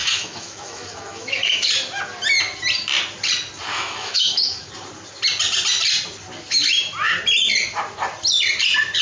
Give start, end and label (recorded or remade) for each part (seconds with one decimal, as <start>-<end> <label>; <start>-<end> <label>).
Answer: 0.0-1.7 remade; 1.7-3.7 recorded; 3.7-4.7 remade; 4.7-9.0 recorded